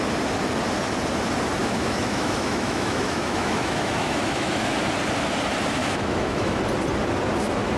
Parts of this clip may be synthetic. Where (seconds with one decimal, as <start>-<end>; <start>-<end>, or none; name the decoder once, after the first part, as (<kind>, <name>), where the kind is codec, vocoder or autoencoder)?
1.6-4.8 (autoencoder, DAC-VAE); 5.8-6.6